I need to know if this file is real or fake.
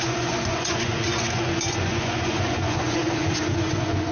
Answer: fake